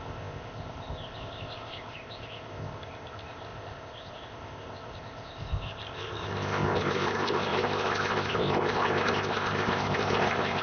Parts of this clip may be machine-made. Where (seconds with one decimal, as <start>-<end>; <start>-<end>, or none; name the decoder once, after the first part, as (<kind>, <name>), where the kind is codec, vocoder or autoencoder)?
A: 0.0-10.6 (codec, ZipCodec)